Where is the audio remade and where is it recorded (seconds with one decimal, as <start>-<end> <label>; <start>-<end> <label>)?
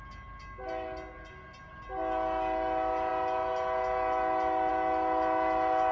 0.0-5.9 recorded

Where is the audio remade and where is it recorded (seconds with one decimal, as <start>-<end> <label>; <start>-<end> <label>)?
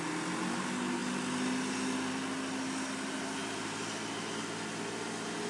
0.0-5.5 recorded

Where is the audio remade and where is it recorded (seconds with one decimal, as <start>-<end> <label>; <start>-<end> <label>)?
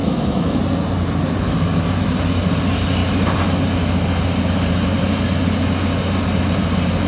0.0-0.6 remade; 0.6-7.1 recorded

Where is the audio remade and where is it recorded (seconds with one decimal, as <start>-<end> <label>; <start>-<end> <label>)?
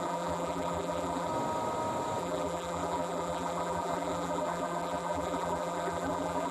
0.0-1.3 remade; 1.3-2.2 recorded; 2.2-6.5 remade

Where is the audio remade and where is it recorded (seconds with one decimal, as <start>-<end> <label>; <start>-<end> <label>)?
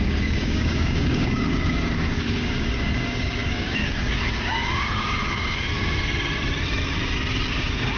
0.0-5.7 remade; 5.7-7.5 recorded; 7.5-8.0 remade